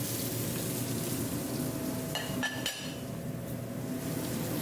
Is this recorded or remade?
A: recorded